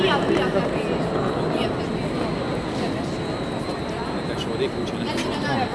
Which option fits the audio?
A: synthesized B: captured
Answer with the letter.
B